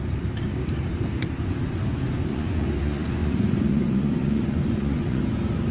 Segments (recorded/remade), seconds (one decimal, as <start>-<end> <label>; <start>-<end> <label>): 0.0-2.3 recorded; 2.3-5.2 remade; 5.2-5.7 recorded